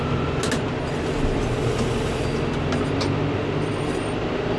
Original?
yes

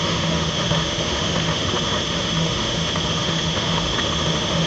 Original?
no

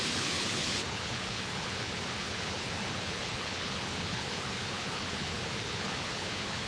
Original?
no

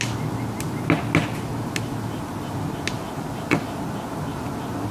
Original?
yes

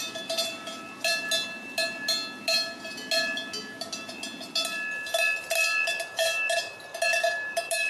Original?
yes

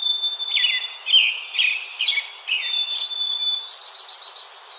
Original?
yes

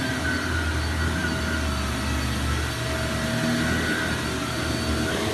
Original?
yes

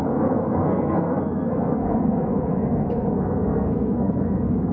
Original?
no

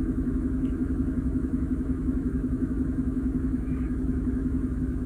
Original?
no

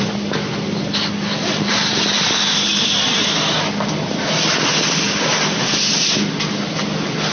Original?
yes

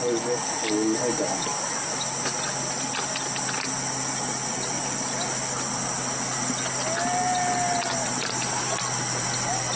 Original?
yes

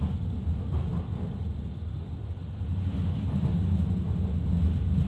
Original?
yes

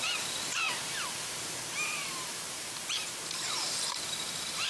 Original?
no